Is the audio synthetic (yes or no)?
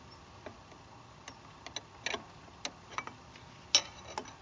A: no